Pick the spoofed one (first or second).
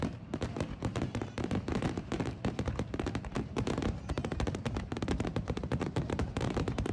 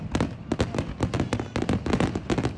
first